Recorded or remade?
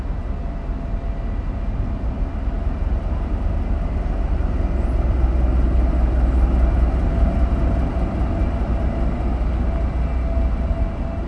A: recorded